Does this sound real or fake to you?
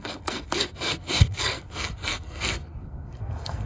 fake